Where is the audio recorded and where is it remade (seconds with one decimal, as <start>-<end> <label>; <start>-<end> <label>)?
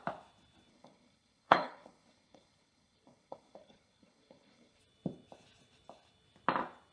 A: 0.0-0.7 recorded; 0.7-4.8 remade; 4.8-6.9 recorded